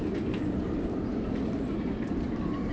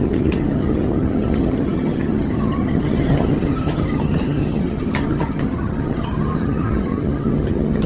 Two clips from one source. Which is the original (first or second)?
first